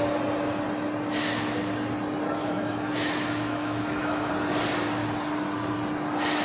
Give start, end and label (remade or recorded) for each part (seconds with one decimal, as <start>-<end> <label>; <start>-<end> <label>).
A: 0.0-2.4 recorded; 2.4-4.3 remade; 4.3-6.4 recorded